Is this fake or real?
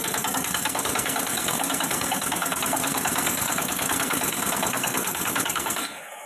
fake